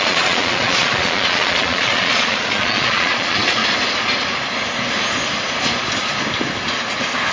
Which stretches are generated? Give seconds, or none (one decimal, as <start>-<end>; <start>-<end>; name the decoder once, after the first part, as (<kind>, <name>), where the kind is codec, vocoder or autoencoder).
0.0-3.6 (vocoder, Vocos)